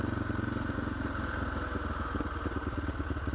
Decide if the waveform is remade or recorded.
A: recorded